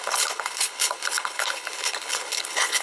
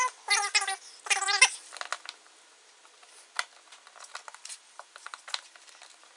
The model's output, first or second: first